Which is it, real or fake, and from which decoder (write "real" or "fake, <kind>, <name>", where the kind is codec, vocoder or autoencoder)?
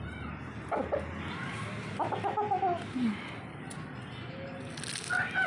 real